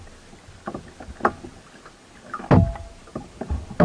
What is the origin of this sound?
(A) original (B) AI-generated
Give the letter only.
A